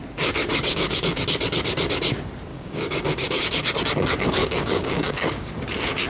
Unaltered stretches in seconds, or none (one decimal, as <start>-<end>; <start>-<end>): 0.0-0.5; 1.2-2.5; 3.4-4.4; 5.5-6.1

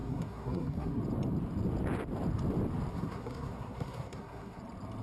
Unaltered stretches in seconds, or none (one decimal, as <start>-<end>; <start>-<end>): 1.0-2.9; 4.6-5.0

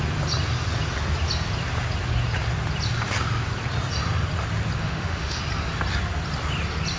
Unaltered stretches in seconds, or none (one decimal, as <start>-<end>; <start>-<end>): 0.0-4.8; 5.4-7.0

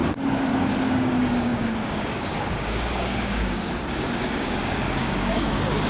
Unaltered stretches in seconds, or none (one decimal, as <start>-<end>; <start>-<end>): 0.0-0.6

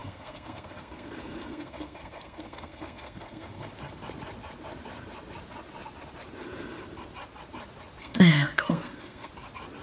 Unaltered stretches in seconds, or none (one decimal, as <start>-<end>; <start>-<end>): 3.7-8.0; 9.3-9.8

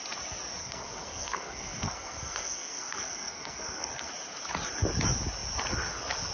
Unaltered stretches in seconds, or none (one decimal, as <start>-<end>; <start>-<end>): 0.0-0.6; 4.1-6.3